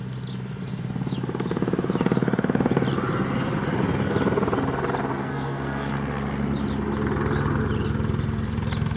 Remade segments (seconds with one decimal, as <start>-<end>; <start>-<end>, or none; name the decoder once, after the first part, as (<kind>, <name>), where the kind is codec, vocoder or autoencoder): 5.1-5.9 (codec, SNAC)